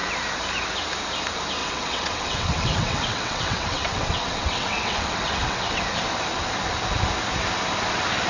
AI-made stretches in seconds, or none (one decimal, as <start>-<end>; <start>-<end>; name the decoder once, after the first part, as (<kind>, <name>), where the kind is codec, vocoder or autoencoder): 1.6-5.8 (vocoder, WaveNeXt)